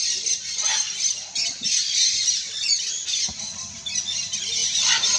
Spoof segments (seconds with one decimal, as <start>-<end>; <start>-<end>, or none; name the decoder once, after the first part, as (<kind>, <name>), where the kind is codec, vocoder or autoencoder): none